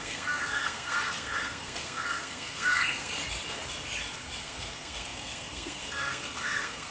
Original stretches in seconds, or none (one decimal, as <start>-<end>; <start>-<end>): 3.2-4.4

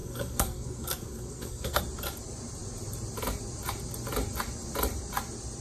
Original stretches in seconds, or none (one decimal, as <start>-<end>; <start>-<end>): 1.8-5.6

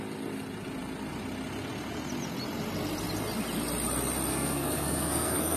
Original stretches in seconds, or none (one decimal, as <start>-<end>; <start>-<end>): 0.0-4.3

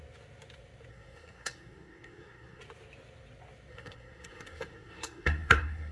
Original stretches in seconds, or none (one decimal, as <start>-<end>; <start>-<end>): 0.0-0.9; 2.6-3.7